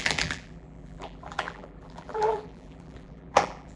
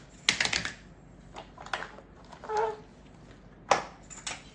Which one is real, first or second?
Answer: second